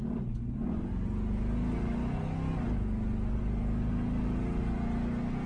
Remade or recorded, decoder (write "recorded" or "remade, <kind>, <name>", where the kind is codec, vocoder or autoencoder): recorded